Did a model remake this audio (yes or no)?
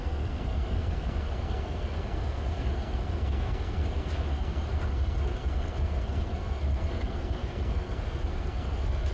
yes